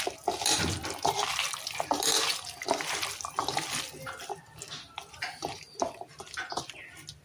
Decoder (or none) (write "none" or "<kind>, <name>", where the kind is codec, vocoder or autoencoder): none